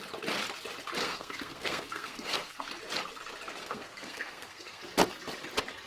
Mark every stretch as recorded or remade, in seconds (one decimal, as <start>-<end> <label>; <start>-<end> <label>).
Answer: 0.0-1.0 recorded; 1.0-2.6 remade; 2.6-3.6 recorded; 3.6-4.8 remade; 4.8-5.9 recorded